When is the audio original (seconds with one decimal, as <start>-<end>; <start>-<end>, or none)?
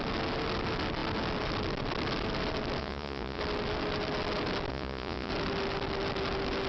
0.0-2.8; 3.4-4.7; 5.3-6.7